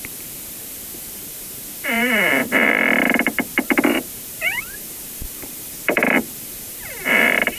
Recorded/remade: remade